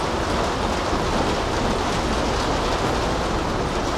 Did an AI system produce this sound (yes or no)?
no